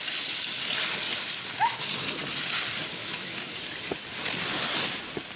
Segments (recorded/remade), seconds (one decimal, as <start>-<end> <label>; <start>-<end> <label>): 0.0-3.0 recorded; 3.0-3.6 remade; 3.6-5.4 recorded